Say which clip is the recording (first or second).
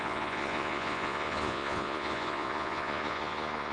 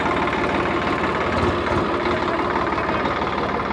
second